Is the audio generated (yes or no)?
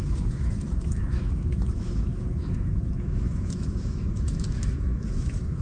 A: yes